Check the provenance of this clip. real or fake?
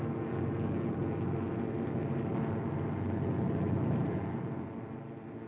real